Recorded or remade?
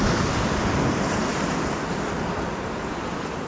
recorded